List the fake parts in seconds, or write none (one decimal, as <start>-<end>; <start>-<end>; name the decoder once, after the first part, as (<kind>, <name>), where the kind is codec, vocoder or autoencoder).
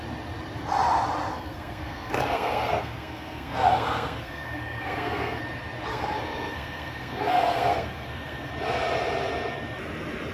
1.3-5.4 (codec, SNAC); 5.9-8.5